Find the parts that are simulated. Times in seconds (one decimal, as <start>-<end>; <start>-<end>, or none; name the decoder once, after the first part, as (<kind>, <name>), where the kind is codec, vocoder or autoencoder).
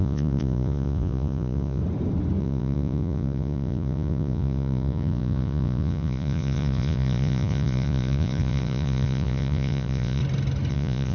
0.0-1.8 (vocoder, Vocos); 2.4-10.2; 10.7-11.1